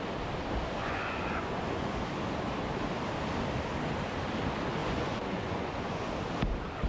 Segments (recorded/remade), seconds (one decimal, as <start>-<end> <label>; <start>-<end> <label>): 0.0-0.8 recorded; 0.8-2.0 remade; 2.0-4.8 recorded; 4.8-6.1 remade; 6.1-6.9 recorded